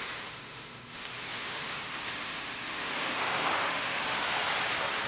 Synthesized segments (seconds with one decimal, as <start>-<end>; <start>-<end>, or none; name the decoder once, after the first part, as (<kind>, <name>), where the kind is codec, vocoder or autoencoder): 0.0-4.4 (autoencoder, DAC-VAE)